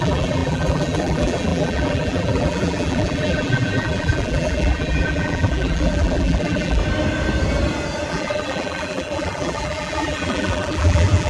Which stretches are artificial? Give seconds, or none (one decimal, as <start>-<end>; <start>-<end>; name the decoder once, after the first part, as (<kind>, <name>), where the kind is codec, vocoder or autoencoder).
0.0-6.8 (vocoder, BigVGAN v2); 8.1-11.3